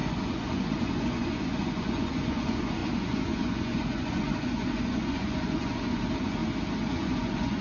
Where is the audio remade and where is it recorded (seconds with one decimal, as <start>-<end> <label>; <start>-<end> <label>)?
0.0-6.4 remade; 6.4-6.9 recorded; 6.9-7.6 remade

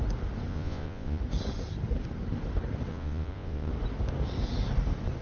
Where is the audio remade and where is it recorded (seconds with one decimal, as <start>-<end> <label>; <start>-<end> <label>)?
0.0-0.5 recorded; 0.5-1.2 remade; 1.2-2.9 recorded; 2.9-3.7 remade; 3.7-5.2 recorded

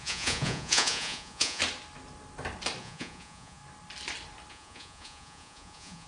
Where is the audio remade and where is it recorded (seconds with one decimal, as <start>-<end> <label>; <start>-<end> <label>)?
0.0-1.6 remade; 1.6-2.8 recorded; 2.8-3.6 remade; 3.6-4.5 recorded; 4.5-6.1 remade

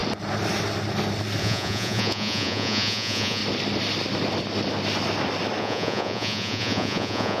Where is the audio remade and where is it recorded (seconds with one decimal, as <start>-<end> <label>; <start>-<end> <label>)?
0.0-1.4 recorded; 1.4-3.4 remade; 3.4-5.6 recorded; 5.6-7.4 remade

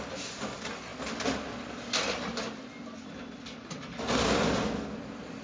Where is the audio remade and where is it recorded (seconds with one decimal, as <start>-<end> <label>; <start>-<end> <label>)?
0.0-5.4 recorded